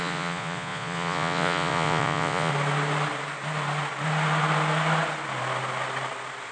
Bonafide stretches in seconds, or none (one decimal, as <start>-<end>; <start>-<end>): 2.5-6.5